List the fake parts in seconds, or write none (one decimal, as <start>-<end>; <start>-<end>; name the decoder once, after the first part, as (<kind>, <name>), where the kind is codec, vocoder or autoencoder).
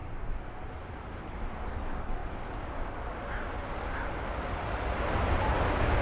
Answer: none